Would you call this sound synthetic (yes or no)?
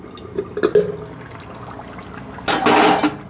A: no